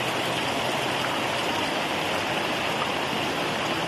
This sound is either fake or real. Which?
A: real